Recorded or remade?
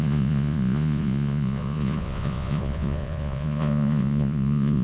remade